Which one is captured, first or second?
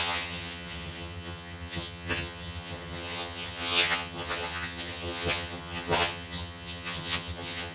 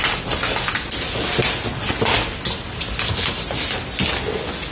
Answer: second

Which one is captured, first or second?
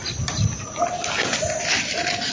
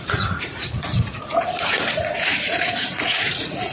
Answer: first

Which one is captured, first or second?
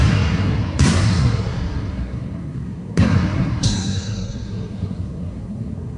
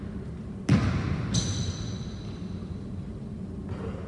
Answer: second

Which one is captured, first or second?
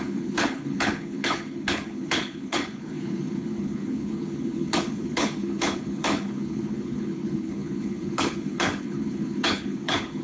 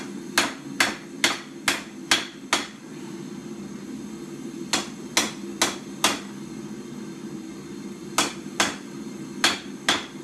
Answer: second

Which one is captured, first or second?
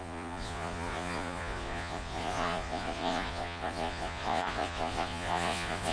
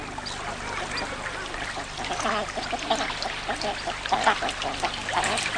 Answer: second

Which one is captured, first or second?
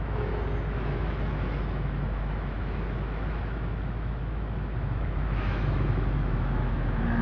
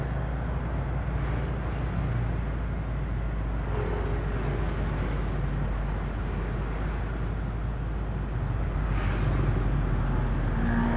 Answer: second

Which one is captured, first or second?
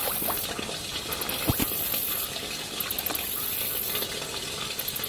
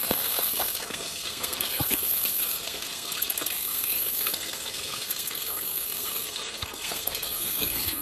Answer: first